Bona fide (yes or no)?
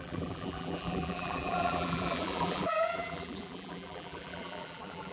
no